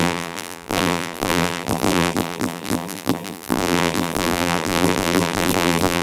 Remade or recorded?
remade